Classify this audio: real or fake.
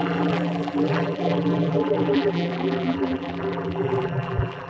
fake